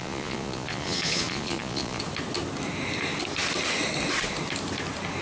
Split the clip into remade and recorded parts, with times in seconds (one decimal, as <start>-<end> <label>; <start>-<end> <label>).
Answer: 0.0-2.0 remade; 2.0-5.2 recorded